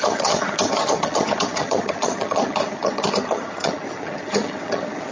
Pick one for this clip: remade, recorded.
remade